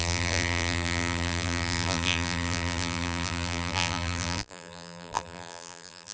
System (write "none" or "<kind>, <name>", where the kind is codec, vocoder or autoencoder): vocoder, BigVGAN v2